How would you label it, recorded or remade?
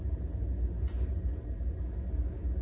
recorded